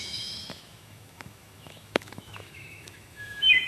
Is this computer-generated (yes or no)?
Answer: yes